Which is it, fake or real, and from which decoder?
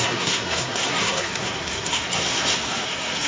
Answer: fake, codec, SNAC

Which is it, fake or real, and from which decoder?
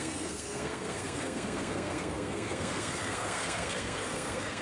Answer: fake, codec, SNAC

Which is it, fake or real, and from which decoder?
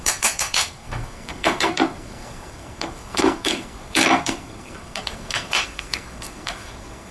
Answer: fake, codec, SNAC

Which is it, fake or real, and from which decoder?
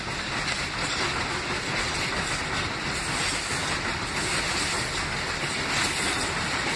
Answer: real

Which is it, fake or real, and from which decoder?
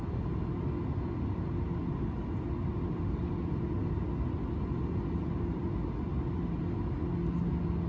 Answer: real